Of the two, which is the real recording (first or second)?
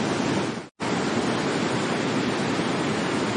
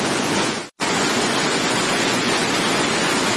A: first